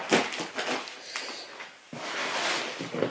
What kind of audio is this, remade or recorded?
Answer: recorded